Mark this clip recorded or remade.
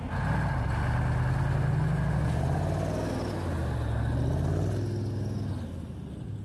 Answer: recorded